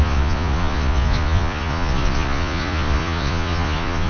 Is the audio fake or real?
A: fake